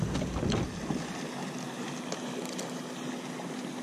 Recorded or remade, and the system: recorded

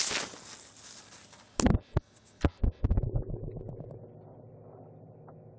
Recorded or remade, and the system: recorded